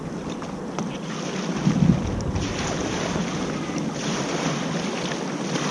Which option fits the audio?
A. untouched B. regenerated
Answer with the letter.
A